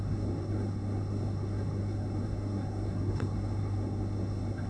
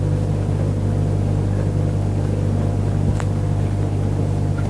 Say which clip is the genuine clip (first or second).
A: second